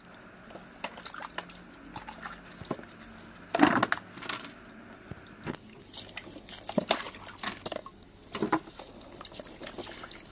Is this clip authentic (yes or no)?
yes